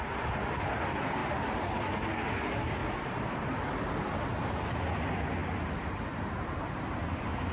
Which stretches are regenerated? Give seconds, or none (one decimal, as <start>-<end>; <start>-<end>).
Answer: 1.2-1.8; 2.8-3.6